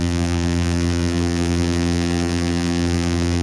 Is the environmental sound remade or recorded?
remade